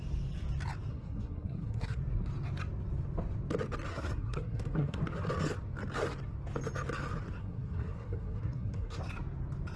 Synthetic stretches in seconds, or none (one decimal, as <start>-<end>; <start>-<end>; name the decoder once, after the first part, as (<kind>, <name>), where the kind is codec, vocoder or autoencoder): 0.9-2.0 (codec, SNAC); 3.9-5.0; 7.4-9.0